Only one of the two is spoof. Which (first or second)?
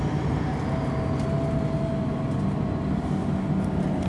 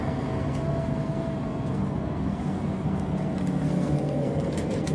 second